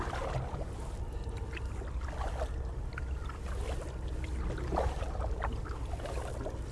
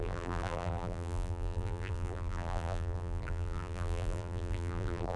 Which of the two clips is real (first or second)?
first